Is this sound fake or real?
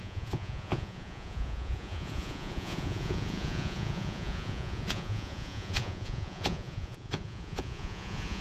fake